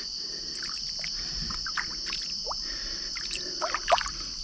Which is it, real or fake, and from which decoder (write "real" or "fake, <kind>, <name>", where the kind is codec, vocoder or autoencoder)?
real